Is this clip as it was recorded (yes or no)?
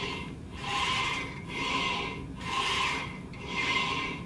no